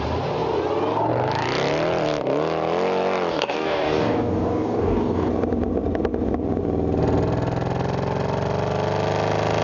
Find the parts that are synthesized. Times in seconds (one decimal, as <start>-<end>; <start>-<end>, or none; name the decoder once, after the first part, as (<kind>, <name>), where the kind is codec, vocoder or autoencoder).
3.3-5.3 (codec, DAC)